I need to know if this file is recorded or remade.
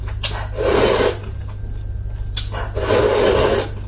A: recorded